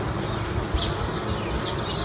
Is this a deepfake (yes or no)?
no